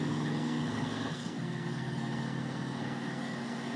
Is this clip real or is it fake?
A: fake